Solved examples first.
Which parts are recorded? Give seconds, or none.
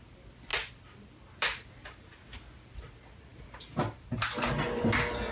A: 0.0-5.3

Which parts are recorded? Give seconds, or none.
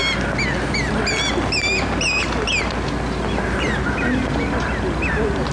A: 0.0-5.5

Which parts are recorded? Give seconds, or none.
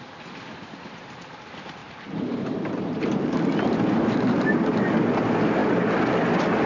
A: 0.0-1.8; 4.5-6.7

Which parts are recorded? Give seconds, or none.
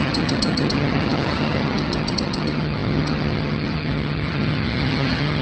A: none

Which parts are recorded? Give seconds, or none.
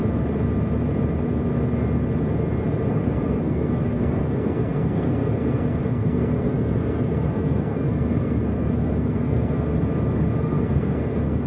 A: 0.0-2.9; 9.7-10.4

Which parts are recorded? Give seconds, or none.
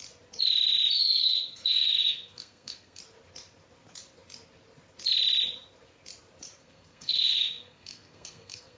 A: 0.0-1.0; 3.0-6.6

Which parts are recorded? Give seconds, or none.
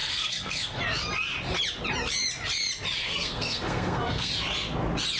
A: 0.8-3.0; 4.3-5.2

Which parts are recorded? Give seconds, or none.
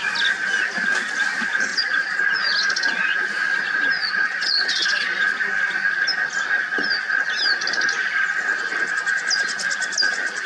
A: 0.0-1.7; 2.2-4.0; 5.2-10.5